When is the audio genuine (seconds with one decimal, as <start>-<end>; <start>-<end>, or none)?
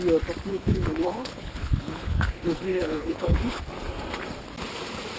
0.0-0.5; 3.6-5.2